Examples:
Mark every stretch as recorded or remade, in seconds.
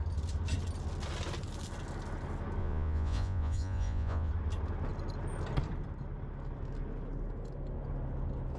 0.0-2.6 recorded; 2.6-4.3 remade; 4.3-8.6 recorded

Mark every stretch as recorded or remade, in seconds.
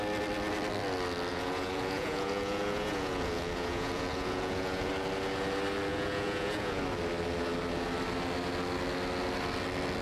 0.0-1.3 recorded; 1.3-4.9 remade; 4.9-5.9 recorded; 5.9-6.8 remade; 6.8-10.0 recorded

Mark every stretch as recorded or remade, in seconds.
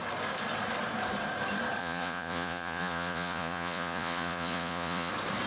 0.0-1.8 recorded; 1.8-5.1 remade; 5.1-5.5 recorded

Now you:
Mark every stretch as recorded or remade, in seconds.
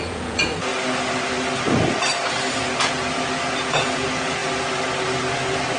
0.0-0.7 remade; 0.7-2.5 recorded; 2.5-3.0 remade; 3.0-3.7 recorded; 3.7-4.4 remade; 4.4-5.8 recorded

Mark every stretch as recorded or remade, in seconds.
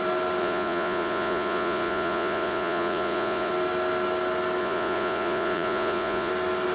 0.0-0.4 recorded; 0.4-3.5 remade; 3.5-4.6 recorded; 4.6-6.3 remade; 6.3-6.7 recorded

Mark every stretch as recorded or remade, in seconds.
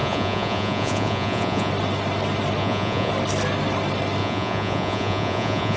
0.0-1.7 remade; 1.7-2.6 recorded; 2.6-3.1 remade; 3.1-4.2 recorded; 4.2-5.8 remade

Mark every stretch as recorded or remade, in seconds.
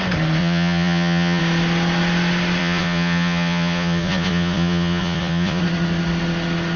0.0-0.4 recorded; 0.4-1.4 remade; 1.4-2.6 recorded; 2.6-5.6 remade; 5.6-6.8 recorded